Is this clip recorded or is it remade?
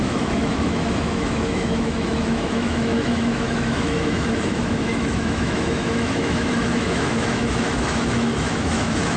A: remade